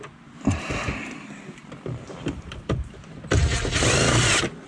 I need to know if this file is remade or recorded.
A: remade